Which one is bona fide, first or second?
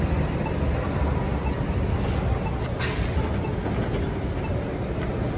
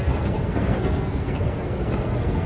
first